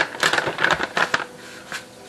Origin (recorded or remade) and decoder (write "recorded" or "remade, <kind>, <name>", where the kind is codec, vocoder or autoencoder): recorded